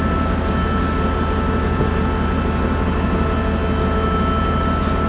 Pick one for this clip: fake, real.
real